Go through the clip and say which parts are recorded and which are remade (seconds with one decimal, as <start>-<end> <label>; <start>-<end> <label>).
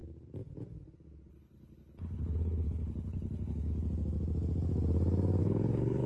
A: 0.0-1.3 recorded; 1.3-3.7 remade; 3.7-5.4 recorded; 5.4-6.1 remade